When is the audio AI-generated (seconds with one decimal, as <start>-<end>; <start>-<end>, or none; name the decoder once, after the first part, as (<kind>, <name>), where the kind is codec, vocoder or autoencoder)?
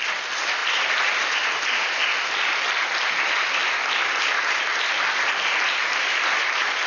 none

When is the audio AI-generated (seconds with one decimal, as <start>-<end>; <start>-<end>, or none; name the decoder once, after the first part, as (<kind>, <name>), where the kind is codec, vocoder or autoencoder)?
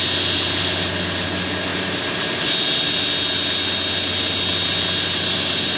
1.7-2.5 (vocoder, BigVGAN v2)